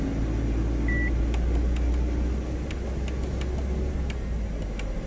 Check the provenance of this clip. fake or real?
real